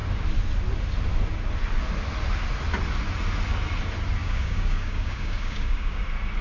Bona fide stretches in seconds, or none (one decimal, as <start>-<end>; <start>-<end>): 0.0-4.2; 6.0-6.4